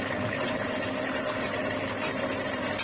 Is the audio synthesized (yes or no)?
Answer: no